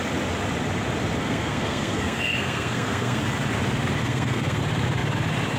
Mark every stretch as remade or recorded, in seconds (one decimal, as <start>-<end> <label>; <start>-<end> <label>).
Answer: 0.0-1.2 recorded; 1.2-3.2 remade; 3.2-4.0 recorded; 4.0-4.6 remade; 4.6-5.6 recorded